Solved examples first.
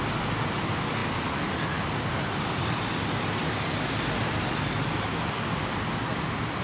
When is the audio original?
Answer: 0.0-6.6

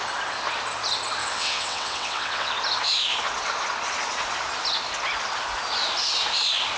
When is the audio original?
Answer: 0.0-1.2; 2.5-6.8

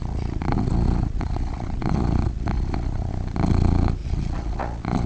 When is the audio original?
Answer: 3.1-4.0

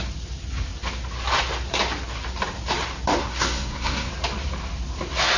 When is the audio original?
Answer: 0.0-3.2; 4.1-5.4

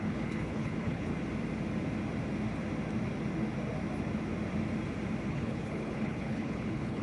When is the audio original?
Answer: 1.1-5.3

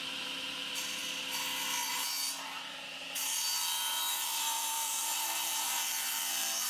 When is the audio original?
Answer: 1.0-1.9